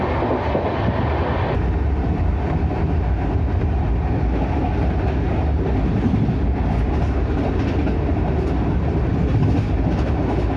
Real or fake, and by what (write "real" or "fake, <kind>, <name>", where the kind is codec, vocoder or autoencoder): real